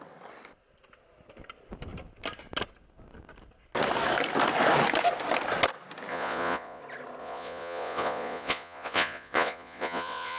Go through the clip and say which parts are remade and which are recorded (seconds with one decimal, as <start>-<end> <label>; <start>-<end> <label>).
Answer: 0.0-6.1 recorded; 6.1-6.8 remade; 6.8-7.2 recorded; 7.2-10.4 remade